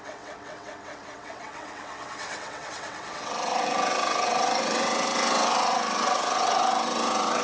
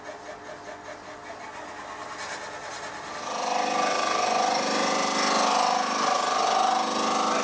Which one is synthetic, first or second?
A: first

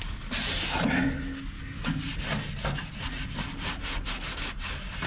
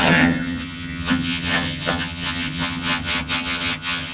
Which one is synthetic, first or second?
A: second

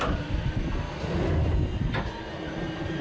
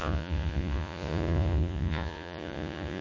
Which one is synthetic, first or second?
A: second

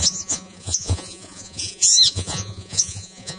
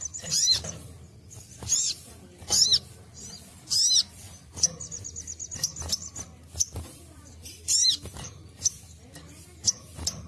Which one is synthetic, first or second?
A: first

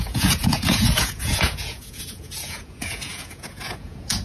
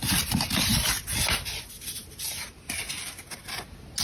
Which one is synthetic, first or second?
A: first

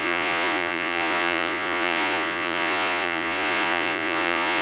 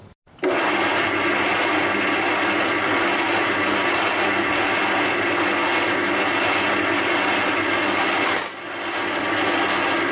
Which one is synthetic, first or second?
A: first